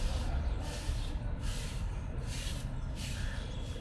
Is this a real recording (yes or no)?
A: yes